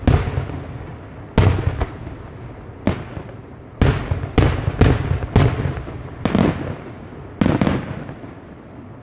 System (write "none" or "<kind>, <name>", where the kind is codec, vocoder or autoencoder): none